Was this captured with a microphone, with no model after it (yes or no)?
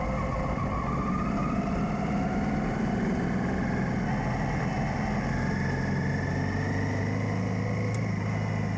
yes